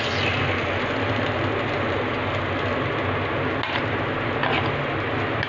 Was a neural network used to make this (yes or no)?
no